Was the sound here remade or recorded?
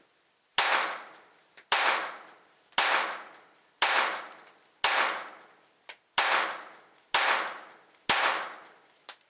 recorded